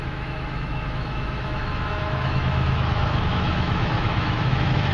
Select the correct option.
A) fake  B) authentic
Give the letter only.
A